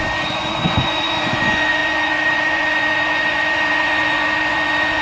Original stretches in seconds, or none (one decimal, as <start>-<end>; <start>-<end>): none